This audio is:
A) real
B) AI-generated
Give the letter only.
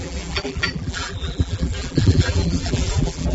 B